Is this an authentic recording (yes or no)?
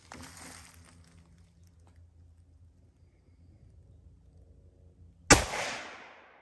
yes